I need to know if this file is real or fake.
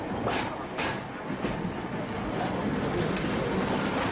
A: fake